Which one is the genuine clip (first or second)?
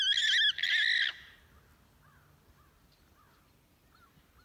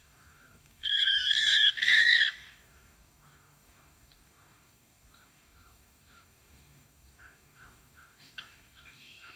first